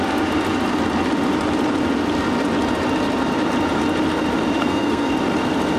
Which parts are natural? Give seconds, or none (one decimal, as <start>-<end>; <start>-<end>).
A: 0.0-4.6; 5.1-5.8